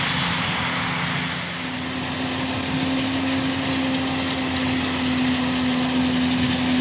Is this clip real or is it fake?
real